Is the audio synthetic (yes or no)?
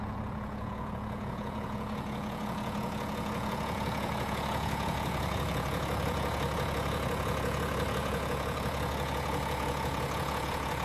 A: yes